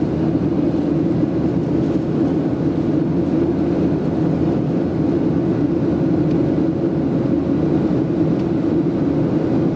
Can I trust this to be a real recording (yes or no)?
yes